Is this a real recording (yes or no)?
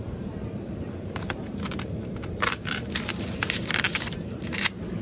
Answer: no